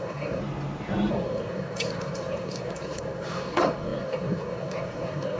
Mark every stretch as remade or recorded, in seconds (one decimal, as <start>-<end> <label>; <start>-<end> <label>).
0.0-0.4 remade; 0.4-1.1 recorded; 1.1-5.4 remade